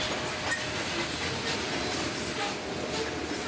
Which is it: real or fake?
real